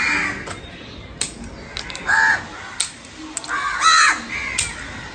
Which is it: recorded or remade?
recorded